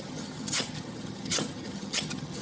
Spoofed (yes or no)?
yes